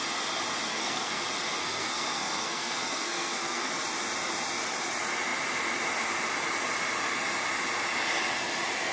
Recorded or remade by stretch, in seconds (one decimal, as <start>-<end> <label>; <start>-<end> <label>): 0.0-0.7 recorded; 0.7-1.2 remade; 1.2-1.6 recorded; 1.6-3.7 remade; 3.7-8.9 recorded